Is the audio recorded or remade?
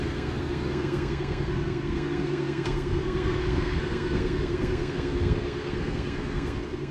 remade